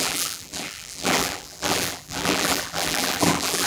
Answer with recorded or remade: remade